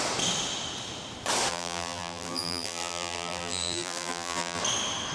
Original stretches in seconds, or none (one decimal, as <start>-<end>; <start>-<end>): 0.0-1.5; 4.6-5.1